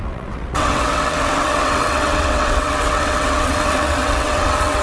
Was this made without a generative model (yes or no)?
no